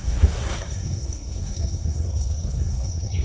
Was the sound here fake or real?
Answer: fake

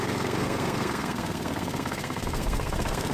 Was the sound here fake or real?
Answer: fake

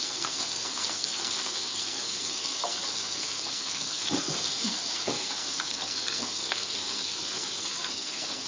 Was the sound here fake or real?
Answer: fake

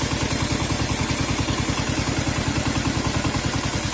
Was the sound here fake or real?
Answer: real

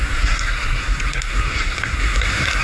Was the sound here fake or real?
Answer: fake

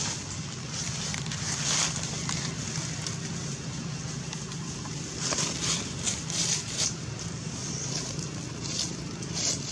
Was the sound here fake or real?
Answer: real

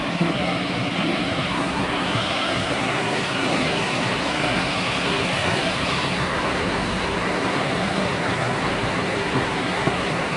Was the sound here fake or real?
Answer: fake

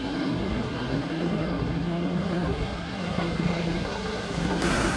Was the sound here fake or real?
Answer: fake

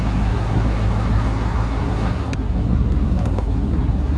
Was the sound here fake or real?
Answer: fake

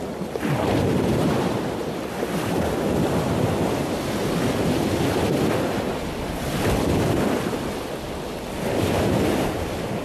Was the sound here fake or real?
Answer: real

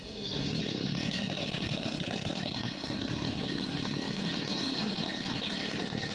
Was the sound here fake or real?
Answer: fake